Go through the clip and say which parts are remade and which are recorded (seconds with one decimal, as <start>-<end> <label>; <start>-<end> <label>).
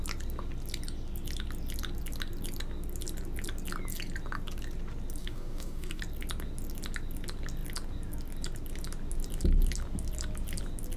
0.0-5.2 recorded; 5.2-6.0 remade; 6.0-11.0 recorded